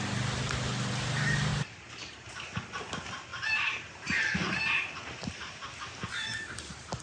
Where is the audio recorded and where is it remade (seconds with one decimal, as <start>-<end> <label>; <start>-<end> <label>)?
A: 0.0-3.3 recorded; 3.3-5.7 remade; 5.7-7.0 recorded